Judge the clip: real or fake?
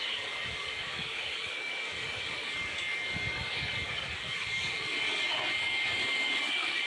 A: fake